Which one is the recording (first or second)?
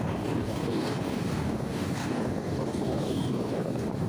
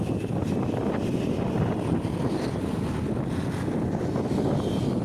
second